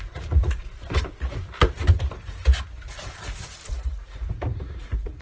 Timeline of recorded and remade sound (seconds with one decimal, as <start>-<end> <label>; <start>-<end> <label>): 0.0-0.6 remade; 0.6-3.7 recorded; 3.7-5.2 remade